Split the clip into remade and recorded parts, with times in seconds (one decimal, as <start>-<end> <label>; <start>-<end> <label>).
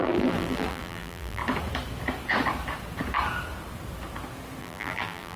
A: 0.0-1.4 remade; 1.4-4.6 recorded; 4.6-5.4 remade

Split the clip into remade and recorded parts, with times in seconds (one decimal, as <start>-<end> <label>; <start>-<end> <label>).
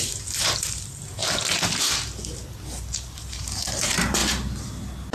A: 0.0-1.2 remade; 1.2-3.2 recorded; 3.2-4.2 remade; 4.2-5.1 recorded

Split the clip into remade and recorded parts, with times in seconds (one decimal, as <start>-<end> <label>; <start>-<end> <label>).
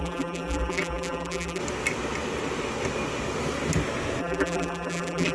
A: 0.0-1.6 remade; 1.6-4.2 recorded; 4.2-5.3 remade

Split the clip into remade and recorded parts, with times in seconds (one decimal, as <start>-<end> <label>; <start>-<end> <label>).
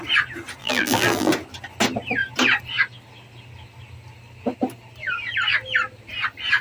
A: 0.0-0.6 recorded; 0.6-1.3 remade; 1.3-6.6 recorded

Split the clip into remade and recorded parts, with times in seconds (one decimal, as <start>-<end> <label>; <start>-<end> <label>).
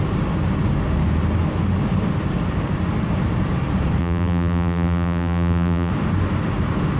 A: 0.0-4.0 recorded; 4.0-5.9 remade; 5.9-7.0 recorded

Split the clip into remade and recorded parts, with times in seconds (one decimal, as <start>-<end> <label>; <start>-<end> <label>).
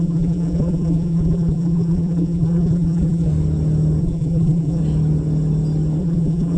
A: 0.0-3.3 remade; 3.3-4.0 recorded; 4.0-4.8 remade; 4.8-6.0 recorded; 6.0-6.6 remade